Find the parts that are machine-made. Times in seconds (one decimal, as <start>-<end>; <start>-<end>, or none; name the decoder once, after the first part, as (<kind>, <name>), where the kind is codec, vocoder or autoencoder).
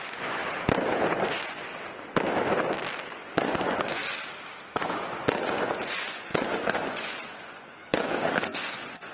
0.0-0.4 (vocoder, Vocos); 1.1-1.7; 3.0-4.0; 4.7-9.1